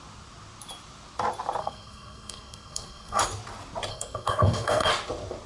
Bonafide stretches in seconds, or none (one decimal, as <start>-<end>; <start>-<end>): 0.0-1.6; 3.2-3.9; 4.9-5.5